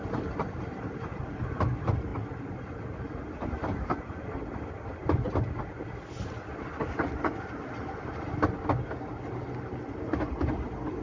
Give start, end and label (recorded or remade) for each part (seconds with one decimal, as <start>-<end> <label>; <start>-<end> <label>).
0.0-11.0 recorded